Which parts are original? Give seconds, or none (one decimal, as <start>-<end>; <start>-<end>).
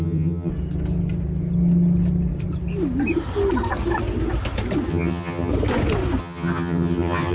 0.5-4.9; 5.5-6.2